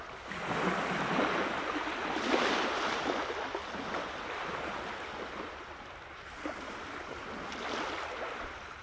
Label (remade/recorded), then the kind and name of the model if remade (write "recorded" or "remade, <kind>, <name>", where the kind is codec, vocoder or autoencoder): recorded